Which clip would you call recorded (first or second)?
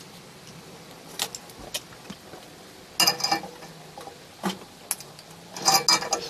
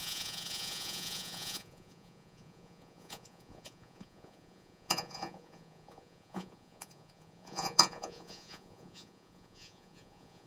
first